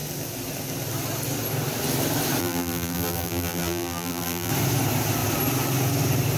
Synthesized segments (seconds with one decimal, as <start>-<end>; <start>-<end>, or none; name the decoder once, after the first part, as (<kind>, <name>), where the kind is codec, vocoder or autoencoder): 2.4-4.5 (vocoder, BigVGAN v2)